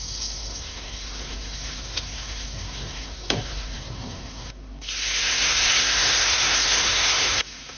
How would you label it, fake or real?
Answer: fake